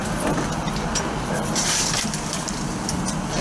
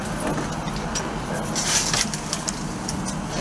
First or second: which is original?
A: second